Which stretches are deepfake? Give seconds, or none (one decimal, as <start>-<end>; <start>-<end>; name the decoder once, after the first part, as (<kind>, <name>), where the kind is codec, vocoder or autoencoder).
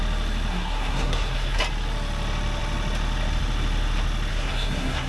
0.5-1.6 (codec, SNAC); 4.3-5.1